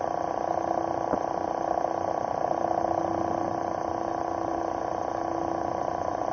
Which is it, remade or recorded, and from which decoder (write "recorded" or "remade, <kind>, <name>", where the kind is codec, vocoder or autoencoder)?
recorded